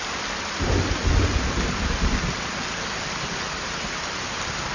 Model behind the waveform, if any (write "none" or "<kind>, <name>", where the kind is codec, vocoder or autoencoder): none